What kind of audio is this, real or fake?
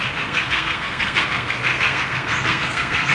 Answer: fake